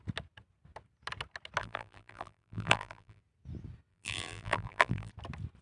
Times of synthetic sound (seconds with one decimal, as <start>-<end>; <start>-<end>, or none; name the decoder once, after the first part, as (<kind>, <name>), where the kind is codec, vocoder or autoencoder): 1.6-3.2 (vocoder, BigVGAN v2); 3.9-5.1